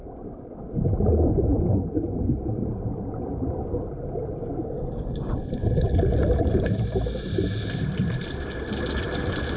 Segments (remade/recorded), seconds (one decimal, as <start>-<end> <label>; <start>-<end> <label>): 0.0-9.6 recorded